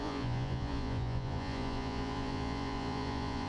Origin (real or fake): fake